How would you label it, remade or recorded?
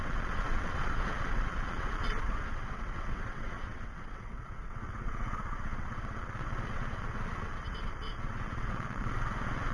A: remade